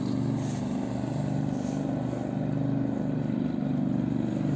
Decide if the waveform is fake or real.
real